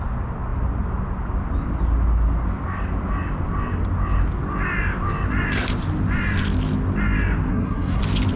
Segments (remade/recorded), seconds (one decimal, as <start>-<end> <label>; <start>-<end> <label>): 0.0-7.5 recorded; 7.5-8.0 remade; 8.0-8.4 recorded